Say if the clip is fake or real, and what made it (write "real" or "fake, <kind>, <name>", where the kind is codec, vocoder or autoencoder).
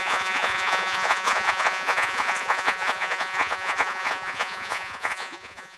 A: fake, vocoder, Vocos